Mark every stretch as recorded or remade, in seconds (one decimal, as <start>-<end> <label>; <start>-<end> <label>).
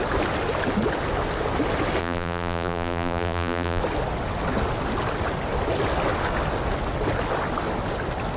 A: 0.0-2.0 recorded; 2.0-3.8 remade; 3.8-8.4 recorded